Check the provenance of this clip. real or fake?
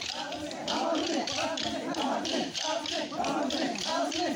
fake